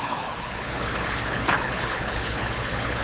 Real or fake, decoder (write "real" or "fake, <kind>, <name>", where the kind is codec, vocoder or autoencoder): fake, codec, HILCodec